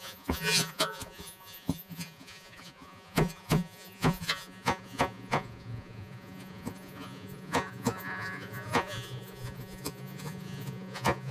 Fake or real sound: fake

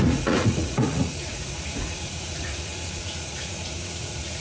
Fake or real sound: fake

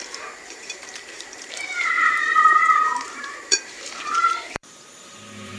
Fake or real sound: fake